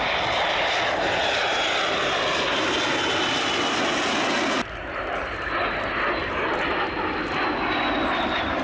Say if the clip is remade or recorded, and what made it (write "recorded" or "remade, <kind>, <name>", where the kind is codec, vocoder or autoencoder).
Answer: recorded